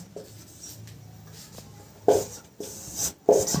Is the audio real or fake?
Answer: fake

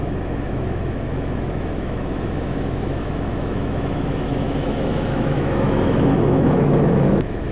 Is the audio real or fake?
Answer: fake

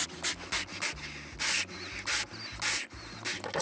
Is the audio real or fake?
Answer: real